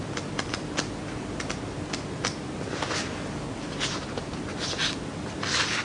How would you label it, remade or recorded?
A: recorded